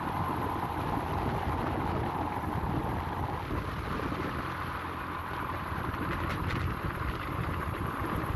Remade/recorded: recorded